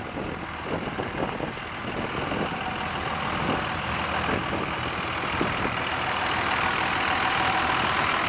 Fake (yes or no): no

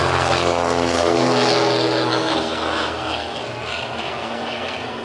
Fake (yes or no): yes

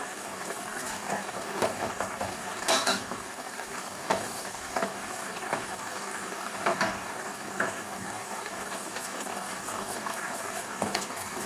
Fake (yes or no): yes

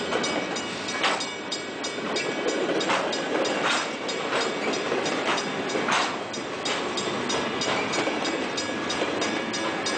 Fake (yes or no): no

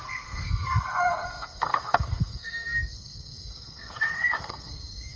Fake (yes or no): yes